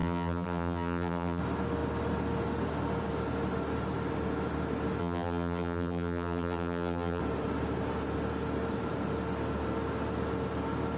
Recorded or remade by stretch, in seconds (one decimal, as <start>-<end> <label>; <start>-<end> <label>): 0.0-1.4 remade; 1.4-5.0 recorded; 5.0-7.2 remade; 7.2-11.0 recorded